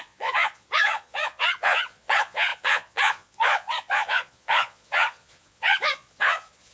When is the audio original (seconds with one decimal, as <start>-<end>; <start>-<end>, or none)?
none